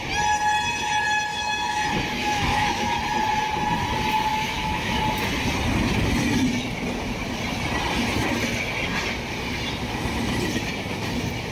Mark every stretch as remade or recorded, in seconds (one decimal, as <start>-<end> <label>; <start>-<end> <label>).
0.0-1.3 recorded; 1.3-1.8 remade; 1.8-2.2 recorded; 2.2-3.0 remade; 3.0-4.3 recorded; 4.3-5.0 remade; 5.0-11.5 recorded